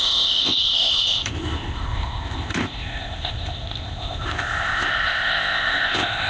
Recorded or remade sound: remade